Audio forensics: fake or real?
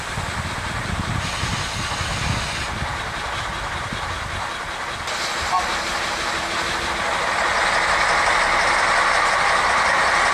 real